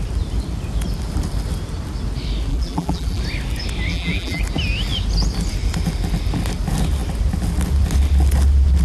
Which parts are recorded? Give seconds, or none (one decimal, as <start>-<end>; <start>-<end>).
0.0-2.5; 3.2-3.9; 4.4-8.8